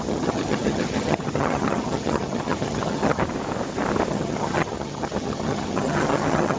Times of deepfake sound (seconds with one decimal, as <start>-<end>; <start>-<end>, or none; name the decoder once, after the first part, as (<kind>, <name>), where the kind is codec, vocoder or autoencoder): 0.0-3.2 (vocoder, HiFi-GAN); 4.1-6.6